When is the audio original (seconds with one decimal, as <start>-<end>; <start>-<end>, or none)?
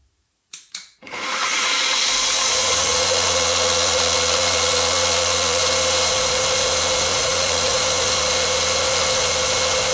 1.7-2.6; 5.6-7.1; 7.8-9.9